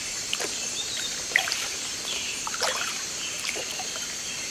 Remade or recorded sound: remade